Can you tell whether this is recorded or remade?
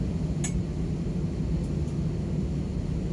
recorded